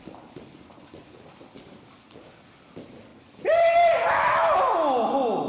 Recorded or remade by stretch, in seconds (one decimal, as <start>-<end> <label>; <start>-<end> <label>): 0.0-5.5 recorded